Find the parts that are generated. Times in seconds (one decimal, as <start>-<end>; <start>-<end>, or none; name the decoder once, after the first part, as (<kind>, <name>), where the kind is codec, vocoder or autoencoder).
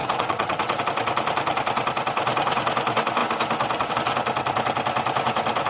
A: 0.0-0.8 (vocoder, WaveNeXt)